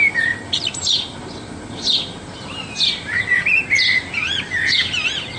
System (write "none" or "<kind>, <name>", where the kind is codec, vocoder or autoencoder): none